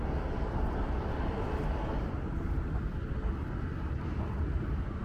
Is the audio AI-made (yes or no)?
no